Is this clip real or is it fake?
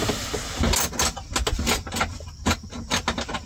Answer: real